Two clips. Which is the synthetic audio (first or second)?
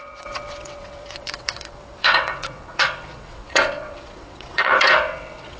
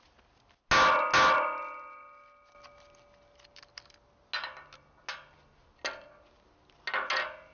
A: first